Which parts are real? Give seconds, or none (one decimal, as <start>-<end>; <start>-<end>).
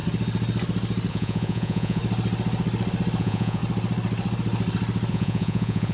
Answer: 0.0-1.1; 2.0-3.2; 3.6-5.1